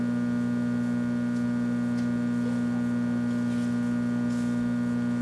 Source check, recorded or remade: recorded